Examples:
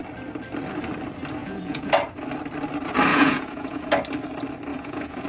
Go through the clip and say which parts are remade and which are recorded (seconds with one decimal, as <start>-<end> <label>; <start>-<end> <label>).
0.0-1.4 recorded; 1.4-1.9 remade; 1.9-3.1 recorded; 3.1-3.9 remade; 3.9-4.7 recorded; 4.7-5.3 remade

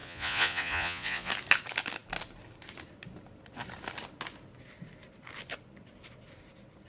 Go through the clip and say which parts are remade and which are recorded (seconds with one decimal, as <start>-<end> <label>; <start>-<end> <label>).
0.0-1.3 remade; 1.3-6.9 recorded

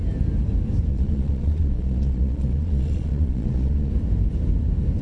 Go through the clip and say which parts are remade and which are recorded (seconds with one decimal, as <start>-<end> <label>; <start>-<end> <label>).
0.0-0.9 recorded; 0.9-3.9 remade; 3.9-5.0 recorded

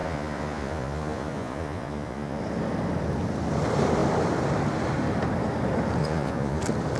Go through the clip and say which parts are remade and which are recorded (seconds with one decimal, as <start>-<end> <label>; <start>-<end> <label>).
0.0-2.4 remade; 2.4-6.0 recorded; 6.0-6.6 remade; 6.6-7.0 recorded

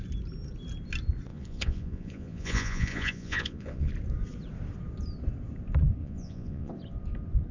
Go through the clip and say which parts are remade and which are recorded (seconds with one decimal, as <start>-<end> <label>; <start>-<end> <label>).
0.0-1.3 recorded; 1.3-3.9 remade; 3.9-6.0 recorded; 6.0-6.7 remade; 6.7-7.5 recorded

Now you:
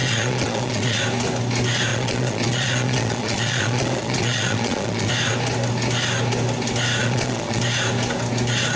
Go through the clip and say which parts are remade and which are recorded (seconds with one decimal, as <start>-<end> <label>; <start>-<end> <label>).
0.0-1.0 remade; 1.0-1.9 recorded; 1.9-5.1 remade; 5.1-7.0 recorded; 7.0-7.6 remade; 7.6-8.8 recorded

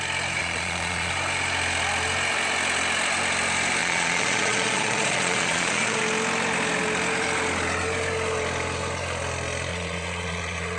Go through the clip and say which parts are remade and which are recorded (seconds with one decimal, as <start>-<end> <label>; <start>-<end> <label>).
0.0-0.4 recorded; 0.4-1.1 remade; 1.1-3.8 recorded; 3.8-6.0 remade; 6.0-9.7 recorded; 9.7-10.8 remade